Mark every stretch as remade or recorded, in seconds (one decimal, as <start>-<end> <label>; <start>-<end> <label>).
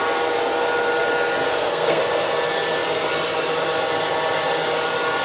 0.0-1.5 recorded; 1.5-2.0 remade; 2.0-5.2 recorded